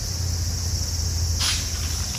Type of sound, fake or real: real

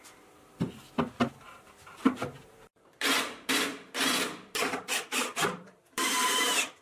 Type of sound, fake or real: fake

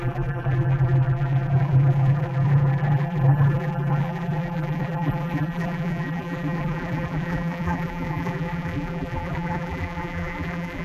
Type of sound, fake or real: fake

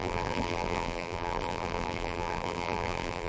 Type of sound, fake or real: fake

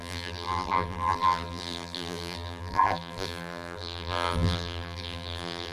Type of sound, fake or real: fake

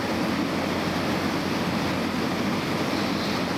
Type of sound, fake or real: real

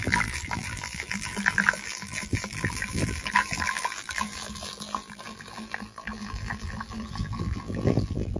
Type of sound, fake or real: fake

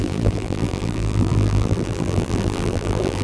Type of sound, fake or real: fake